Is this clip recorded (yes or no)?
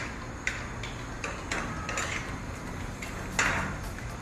yes